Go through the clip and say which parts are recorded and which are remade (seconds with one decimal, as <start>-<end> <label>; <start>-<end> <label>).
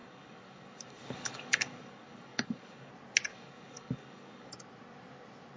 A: 0.0-2.9 remade; 2.9-3.3 recorded; 3.3-4.5 remade; 4.5-5.6 recorded